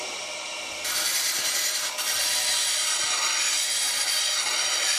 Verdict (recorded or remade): recorded